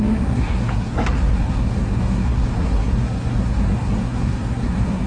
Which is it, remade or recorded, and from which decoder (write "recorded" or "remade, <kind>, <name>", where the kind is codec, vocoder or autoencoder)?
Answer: remade, codec, SNAC